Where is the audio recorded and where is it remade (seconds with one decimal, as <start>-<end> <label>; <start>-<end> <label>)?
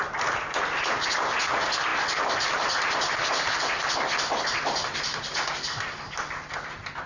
0.0-7.1 recorded